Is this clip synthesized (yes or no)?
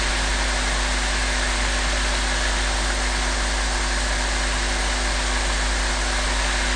no